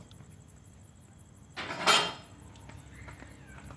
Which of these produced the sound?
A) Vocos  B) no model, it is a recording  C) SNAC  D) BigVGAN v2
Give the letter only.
B